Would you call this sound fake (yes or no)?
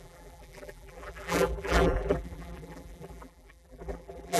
yes